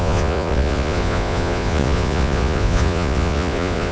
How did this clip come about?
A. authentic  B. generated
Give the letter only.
B